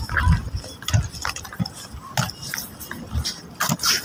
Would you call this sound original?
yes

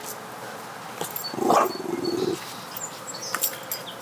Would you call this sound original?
yes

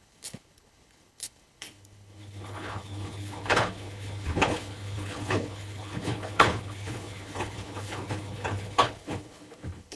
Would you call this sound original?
no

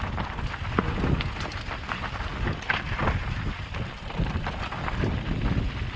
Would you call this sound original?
yes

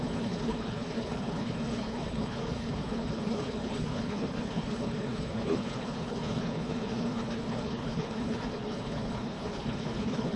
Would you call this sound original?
no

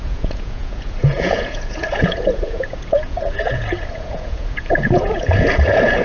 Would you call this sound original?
no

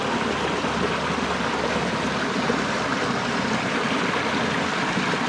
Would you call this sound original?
yes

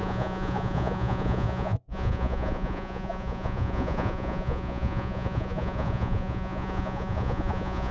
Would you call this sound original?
no